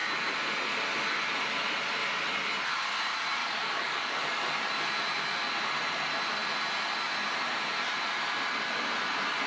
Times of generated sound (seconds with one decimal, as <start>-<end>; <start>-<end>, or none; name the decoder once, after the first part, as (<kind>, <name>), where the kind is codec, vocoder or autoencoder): 3.4-4.2 (codec, DAC)